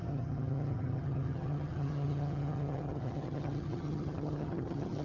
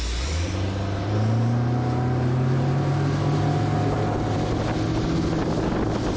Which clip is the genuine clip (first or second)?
second